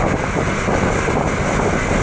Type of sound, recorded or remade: recorded